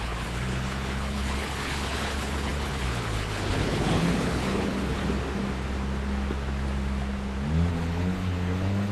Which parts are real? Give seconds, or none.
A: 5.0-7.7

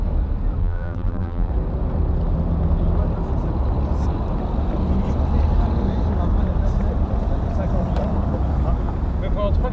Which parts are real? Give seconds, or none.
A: 0.0-0.6; 1.5-9.7

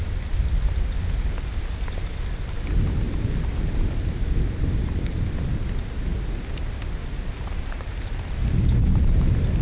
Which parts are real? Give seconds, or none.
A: 0.0-9.6

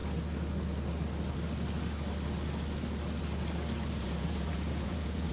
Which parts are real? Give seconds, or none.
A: 0.0-4.0

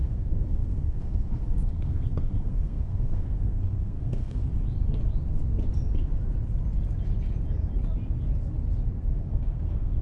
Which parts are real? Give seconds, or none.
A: 4.4-9.1

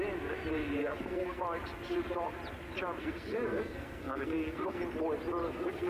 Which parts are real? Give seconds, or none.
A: 0.0-0.8; 1.4-3.0; 4.8-5.4